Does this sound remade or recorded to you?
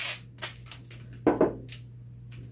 recorded